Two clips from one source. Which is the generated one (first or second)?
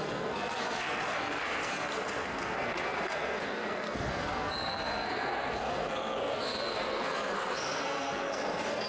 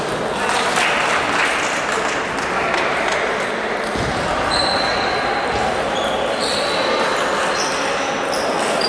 first